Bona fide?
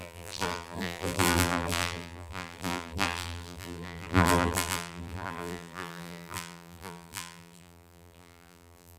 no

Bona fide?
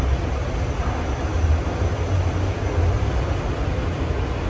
yes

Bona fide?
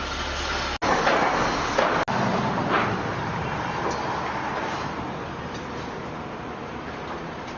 yes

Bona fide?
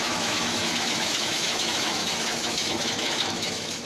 no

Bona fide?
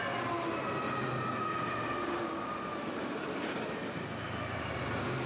yes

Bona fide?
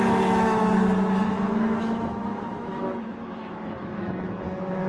no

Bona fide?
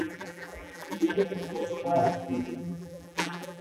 no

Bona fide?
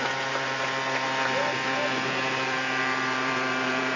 no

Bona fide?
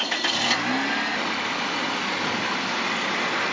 yes